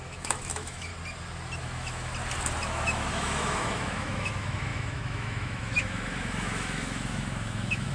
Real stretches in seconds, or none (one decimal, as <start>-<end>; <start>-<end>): 0.9-1.6; 2.1-2.6